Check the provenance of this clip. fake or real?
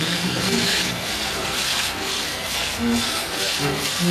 fake